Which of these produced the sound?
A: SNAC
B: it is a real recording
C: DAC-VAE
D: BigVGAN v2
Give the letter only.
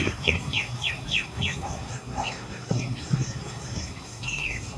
A